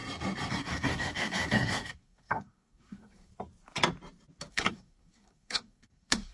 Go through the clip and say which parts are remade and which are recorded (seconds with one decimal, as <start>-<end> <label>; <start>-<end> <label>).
0.0-0.5 recorded; 0.5-3.3 remade; 3.3-4.5 recorded; 4.5-6.3 remade